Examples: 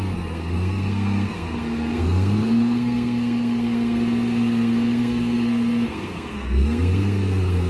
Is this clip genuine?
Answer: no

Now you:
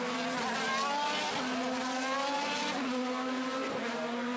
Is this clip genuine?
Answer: yes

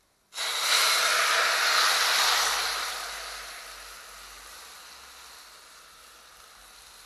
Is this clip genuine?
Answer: yes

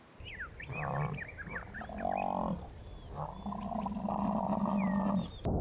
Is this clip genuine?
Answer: yes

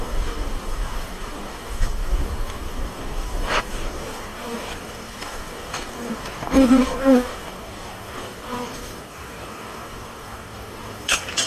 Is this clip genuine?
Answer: no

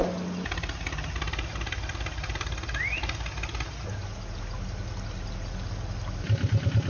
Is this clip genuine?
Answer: yes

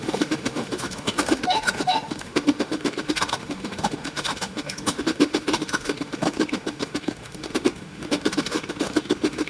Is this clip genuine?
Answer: no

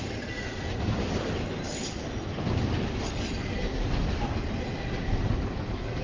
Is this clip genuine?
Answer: no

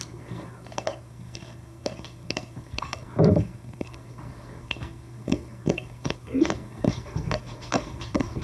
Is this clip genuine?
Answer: no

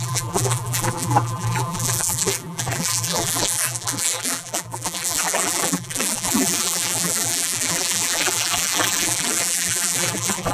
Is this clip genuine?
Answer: no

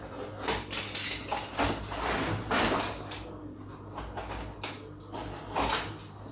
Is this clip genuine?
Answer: yes